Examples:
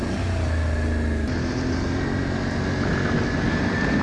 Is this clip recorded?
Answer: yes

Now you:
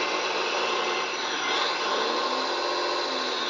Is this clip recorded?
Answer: yes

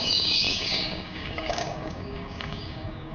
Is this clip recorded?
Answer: no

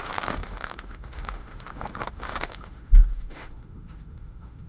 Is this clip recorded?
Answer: no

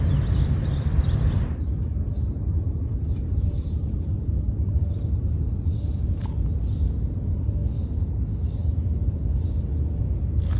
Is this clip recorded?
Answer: yes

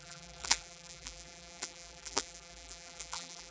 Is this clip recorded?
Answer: no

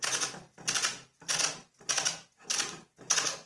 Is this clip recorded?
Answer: yes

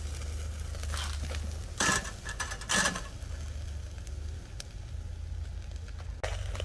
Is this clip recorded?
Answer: yes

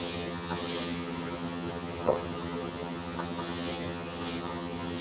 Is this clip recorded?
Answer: no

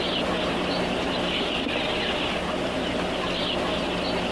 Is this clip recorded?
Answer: yes